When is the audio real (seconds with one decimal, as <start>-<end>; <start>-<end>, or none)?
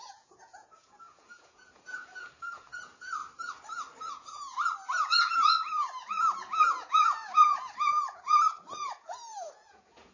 3.2-4.1; 4.6-5.8